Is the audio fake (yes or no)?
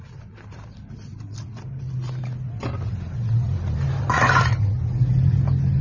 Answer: no